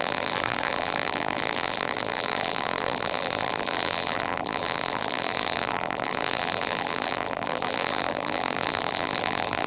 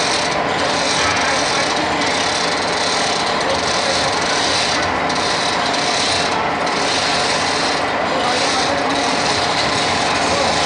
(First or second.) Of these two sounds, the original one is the second